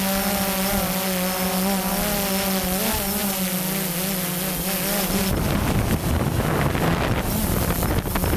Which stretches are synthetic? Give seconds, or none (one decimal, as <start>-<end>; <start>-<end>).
none